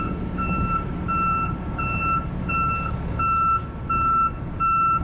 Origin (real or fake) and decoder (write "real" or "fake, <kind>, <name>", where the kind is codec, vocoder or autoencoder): real